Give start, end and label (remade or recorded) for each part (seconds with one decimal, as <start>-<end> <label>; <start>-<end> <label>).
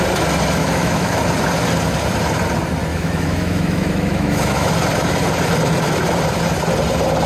0.0-0.6 recorded; 0.6-1.2 remade; 1.2-2.9 recorded; 2.9-4.7 remade; 4.7-7.3 recorded